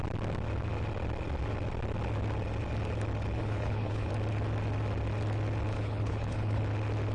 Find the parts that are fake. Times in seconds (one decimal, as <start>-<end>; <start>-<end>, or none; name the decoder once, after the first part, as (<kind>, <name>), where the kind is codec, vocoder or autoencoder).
3.4-4.1 (codec, HILCodec); 5.7-6.6